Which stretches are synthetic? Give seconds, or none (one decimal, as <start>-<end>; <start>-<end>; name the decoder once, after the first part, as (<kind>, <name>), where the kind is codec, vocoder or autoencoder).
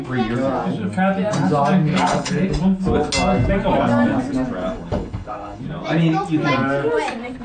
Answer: 1.9-2.5 (codec, HILCodec); 4.6-5.6